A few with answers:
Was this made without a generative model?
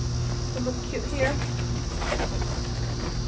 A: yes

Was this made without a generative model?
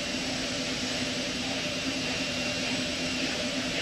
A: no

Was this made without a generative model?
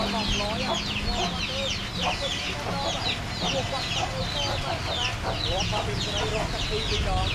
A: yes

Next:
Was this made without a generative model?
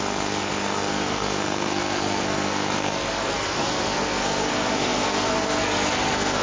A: no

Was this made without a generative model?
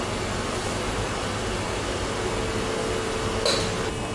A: yes